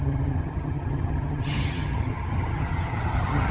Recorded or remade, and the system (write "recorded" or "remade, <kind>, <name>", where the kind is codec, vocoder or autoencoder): remade, vocoder, HiFi-GAN